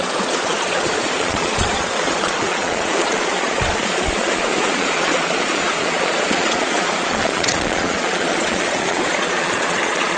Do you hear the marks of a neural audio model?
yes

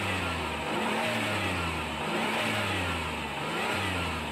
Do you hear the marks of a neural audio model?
no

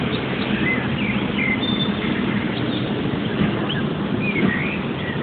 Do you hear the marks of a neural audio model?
no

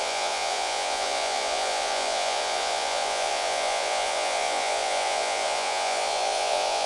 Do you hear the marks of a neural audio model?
yes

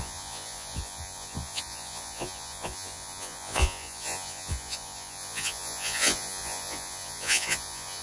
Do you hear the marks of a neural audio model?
yes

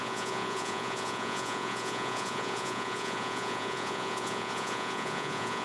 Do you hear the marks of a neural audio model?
yes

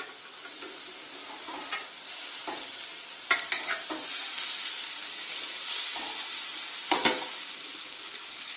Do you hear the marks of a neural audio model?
no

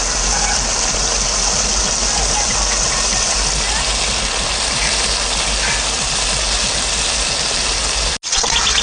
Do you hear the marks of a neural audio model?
no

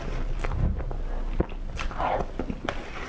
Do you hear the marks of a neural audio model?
no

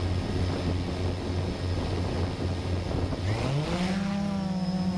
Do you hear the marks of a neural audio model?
no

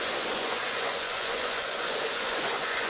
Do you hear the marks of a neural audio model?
yes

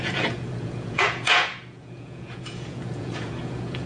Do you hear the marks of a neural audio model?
yes